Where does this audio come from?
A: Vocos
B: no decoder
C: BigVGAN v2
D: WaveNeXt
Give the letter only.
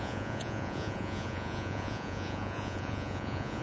A